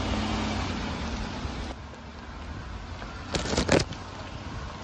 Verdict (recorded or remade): recorded